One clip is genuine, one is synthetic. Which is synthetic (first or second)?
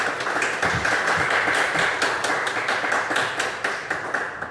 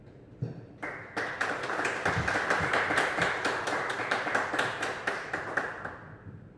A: second